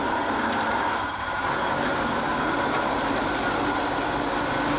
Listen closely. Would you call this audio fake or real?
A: real